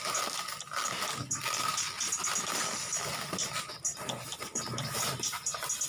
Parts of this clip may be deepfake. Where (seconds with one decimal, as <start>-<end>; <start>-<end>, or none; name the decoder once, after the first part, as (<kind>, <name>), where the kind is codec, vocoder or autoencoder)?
3.9-4.9 (vocoder, BigVGAN v2)